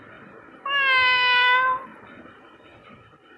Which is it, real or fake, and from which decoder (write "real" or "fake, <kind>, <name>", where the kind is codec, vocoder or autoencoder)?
real